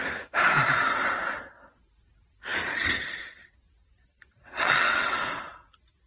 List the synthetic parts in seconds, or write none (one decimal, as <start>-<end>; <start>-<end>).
4.0-5.2